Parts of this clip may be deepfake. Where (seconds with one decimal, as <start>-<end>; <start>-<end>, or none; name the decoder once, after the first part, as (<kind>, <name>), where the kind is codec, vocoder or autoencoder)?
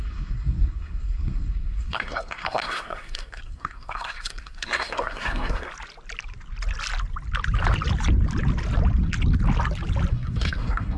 0.0-5.7 (codec, SNAC); 10.1-11.0